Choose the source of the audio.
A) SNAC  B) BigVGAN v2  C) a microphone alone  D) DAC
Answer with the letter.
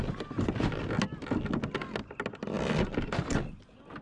C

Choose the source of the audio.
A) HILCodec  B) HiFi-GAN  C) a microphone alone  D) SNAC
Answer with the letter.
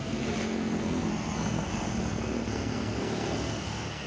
D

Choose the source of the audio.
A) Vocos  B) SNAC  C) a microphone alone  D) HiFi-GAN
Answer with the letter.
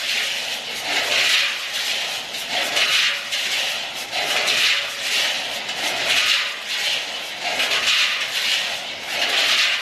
C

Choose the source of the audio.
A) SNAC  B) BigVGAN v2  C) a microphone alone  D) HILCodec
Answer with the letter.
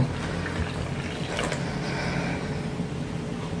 C